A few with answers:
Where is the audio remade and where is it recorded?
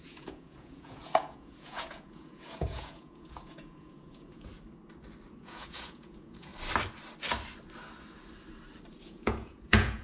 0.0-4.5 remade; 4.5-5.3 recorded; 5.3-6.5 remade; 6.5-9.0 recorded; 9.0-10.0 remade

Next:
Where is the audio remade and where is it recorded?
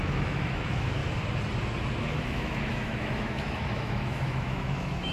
0.0-1.0 remade; 1.0-2.0 recorded; 2.0-5.1 remade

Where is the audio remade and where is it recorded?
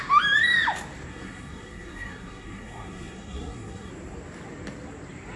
0.0-1.1 recorded; 1.1-3.9 remade; 3.9-5.4 recorded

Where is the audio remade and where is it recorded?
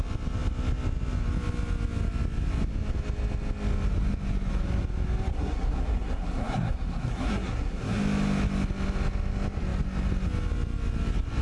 0.0-5.3 recorded; 5.3-8.0 remade; 8.0-11.4 recorded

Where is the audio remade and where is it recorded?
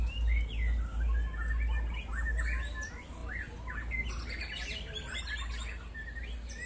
0.0-6.7 recorded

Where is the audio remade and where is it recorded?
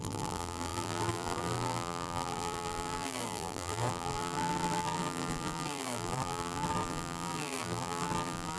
0.0-8.6 remade